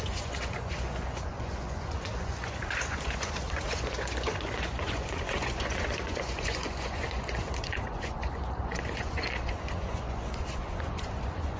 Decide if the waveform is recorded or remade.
remade